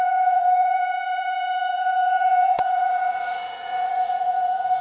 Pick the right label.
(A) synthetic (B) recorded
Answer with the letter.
A